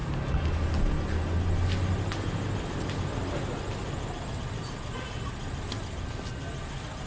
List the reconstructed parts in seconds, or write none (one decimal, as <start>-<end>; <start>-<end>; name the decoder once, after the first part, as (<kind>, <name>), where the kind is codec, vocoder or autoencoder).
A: none